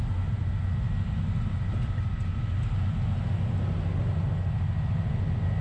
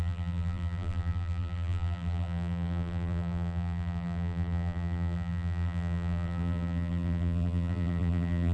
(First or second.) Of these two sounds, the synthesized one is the second